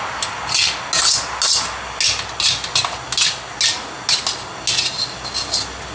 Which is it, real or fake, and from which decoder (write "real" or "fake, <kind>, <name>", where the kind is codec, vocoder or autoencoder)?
real